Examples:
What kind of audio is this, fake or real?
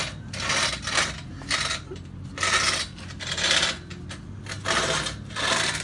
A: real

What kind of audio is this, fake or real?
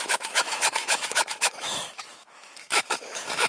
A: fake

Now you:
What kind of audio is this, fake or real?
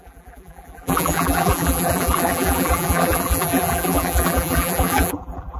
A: fake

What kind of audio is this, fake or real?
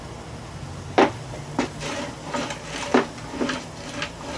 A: real